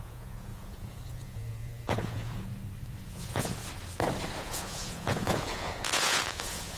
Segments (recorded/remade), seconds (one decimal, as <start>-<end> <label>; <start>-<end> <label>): 0.0-2.5 remade; 2.5-3.0 recorded; 3.0-3.6 remade; 3.6-4.4 recorded; 4.4-6.8 remade